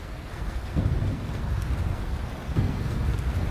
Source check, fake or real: fake